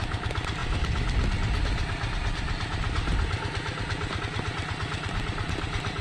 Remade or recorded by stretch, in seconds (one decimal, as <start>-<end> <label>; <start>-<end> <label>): 0.0-6.0 recorded